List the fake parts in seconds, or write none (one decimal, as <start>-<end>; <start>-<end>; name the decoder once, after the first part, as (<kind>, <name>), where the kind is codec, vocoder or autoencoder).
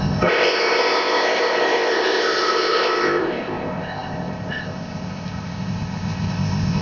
0.0-6.8 (codec, ZipCodec)